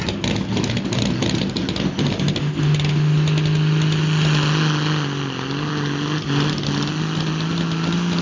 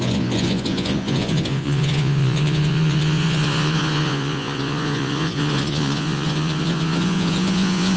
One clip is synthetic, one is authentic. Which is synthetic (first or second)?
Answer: second